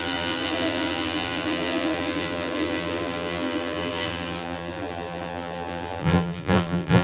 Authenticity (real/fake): fake